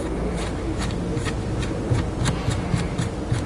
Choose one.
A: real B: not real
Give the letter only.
A